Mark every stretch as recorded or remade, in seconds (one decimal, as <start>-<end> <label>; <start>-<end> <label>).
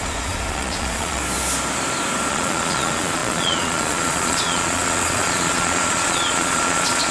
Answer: 0.0-1.2 remade; 1.2-2.3 recorded; 2.3-7.1 remade